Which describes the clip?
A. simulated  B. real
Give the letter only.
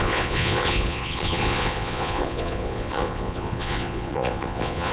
A